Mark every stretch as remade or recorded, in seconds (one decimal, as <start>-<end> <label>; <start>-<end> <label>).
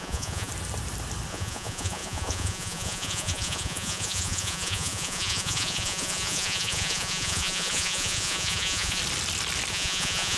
0.0-0.5 remade; 0.5-1.3 recorded; 1.3-9.0 remade; 9.0-9.7 recorded; 9.7-10.4 remade